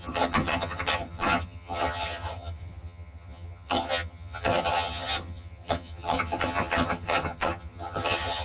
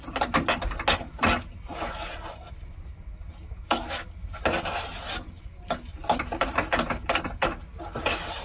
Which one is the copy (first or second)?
first